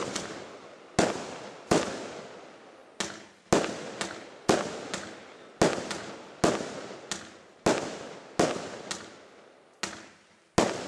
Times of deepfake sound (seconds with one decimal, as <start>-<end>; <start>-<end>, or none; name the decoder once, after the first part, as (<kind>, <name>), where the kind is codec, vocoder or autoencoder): none